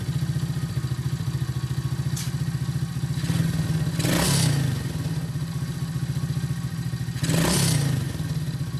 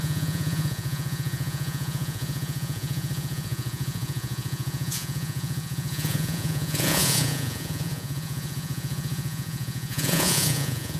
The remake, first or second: second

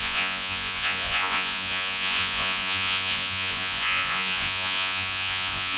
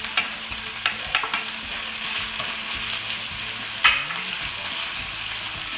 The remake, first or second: first